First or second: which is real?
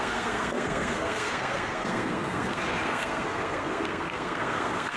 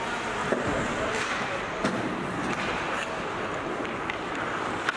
second